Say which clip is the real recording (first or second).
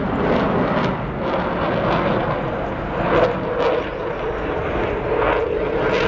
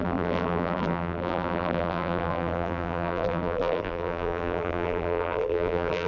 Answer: first